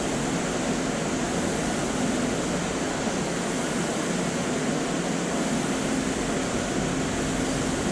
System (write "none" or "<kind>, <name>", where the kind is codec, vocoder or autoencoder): none